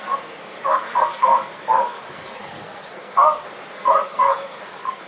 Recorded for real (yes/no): no